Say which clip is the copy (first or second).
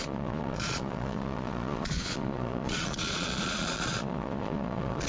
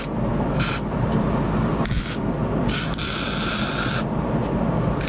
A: first